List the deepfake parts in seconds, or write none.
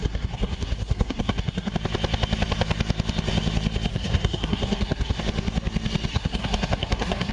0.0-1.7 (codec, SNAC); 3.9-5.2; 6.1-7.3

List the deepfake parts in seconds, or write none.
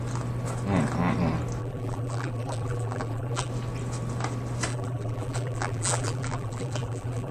1.6-3.5 (vocoder, BigVGAN v2); 4.7-7.3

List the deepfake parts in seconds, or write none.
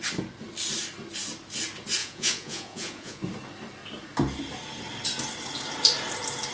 2.0-3.2 (vocoder, Vocos)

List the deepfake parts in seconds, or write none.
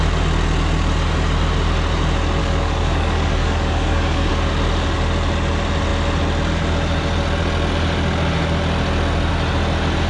2.4-4.3 (codec, DAC)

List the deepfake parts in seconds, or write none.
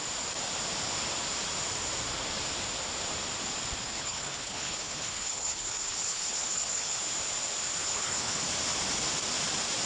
3.8-7.0 (codec, HILCodec); 7.8-8.4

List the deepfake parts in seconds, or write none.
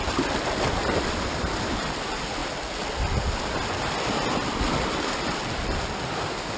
0.0-2.4 (vocoder, BigVGAN v2); 5.1-6.6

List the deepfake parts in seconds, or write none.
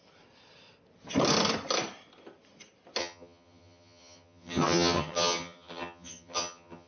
3.0-6.9 (vocoder, HiFi-GAN)